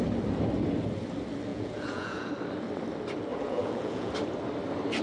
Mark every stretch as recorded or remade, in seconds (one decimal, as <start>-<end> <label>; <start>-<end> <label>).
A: 0.0-1.5 recorded; 1.5-2.3 remade; 2.3-3.3 recorded; 3.3-4.1 remade; 4.1-5.0 recorded